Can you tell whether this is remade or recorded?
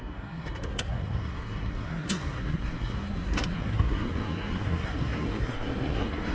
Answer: remade